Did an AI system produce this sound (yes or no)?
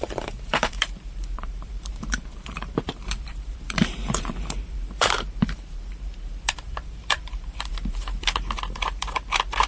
yes